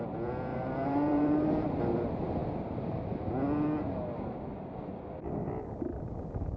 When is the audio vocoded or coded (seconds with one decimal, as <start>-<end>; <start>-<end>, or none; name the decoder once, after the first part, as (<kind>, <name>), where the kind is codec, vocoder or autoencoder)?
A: 0.5-1.8 (vocoder, BigVGAN v2)